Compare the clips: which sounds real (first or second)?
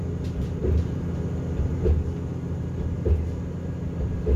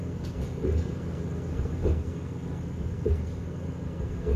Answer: first